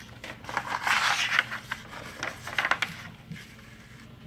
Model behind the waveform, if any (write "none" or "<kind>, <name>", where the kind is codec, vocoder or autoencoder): none